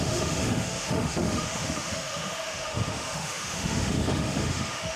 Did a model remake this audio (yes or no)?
yes